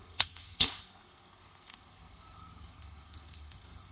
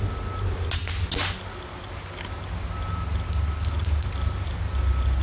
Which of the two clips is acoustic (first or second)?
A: second